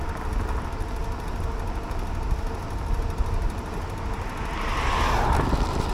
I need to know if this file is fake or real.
real